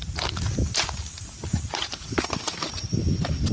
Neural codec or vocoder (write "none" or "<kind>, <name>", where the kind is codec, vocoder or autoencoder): vocoder, BigVGAN v2